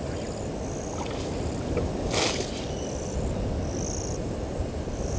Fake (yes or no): yes